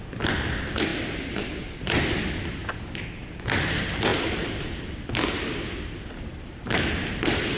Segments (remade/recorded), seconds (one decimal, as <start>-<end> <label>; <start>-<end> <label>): 0.0-0.9 recorded; 0.9-1.8 remade; 1.8-4.1 recorded; 4.1-5.8 remade; 5.8-7.6 recorded